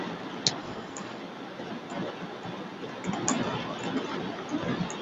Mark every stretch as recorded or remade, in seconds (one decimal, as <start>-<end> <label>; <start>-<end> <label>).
0.0-0.6 recorded; 0.6-1.2 remade; 1.2-5.0 recorded